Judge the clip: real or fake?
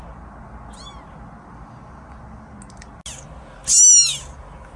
real